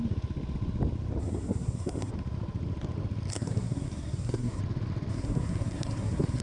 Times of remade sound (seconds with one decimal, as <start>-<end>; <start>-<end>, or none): 1.2-2.1; 3.3-4.6; 5.1-6.4